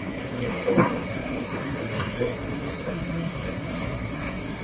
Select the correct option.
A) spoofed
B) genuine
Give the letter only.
A